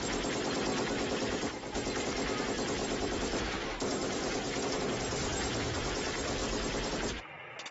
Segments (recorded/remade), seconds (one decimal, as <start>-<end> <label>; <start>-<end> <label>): 0.0-2.8 recorded; 2.8-4.8 remade; 4.8-7.7 recorded